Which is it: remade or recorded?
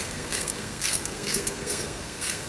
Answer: remade